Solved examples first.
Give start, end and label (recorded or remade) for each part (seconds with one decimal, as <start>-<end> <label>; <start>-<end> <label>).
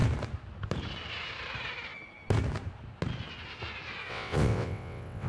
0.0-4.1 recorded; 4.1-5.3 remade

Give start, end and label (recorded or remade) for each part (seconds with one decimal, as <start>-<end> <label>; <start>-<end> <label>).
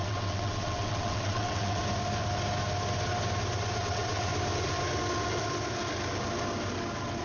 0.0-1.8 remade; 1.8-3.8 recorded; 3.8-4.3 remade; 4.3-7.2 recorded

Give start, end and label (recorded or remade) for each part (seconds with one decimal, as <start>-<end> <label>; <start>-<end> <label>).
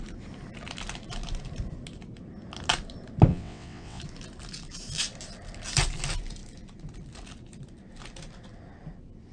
0.0-3.3 recorded; 3.3-4.0 remade; 4.0-9.3 recorded